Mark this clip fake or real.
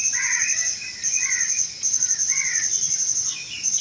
real